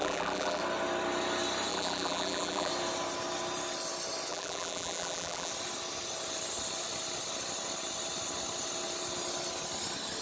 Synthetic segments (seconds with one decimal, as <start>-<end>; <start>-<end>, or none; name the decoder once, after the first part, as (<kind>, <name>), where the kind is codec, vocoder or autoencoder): 0.0-0.6 (vocoder, BigVGAN v2); 1.7-2.7; 4.3-5.5